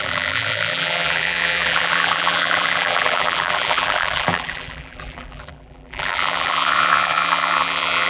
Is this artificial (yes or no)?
yes